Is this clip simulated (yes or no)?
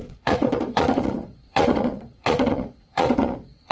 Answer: yes